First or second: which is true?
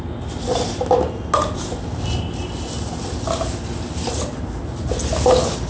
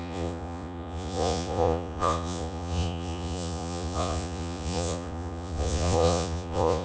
first